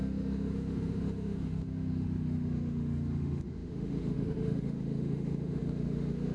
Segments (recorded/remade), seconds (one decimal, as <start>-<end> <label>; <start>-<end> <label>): 0.0-6.3 remade